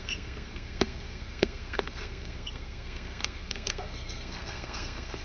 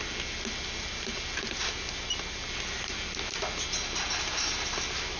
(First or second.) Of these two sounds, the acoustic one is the second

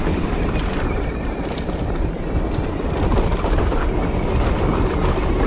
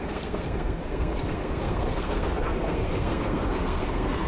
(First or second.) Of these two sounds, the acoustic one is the first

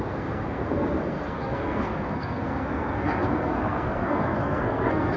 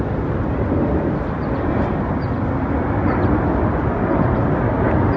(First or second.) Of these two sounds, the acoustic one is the second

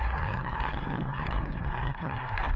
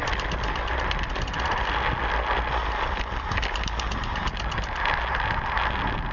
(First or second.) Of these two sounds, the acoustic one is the second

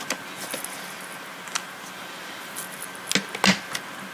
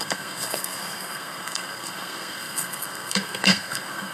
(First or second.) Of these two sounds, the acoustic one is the first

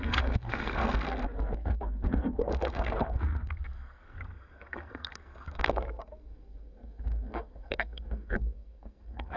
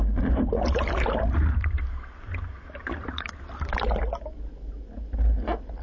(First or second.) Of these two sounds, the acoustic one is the second